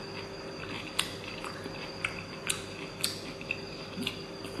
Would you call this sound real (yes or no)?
yes